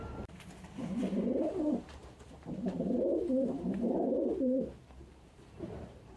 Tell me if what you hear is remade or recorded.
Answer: remade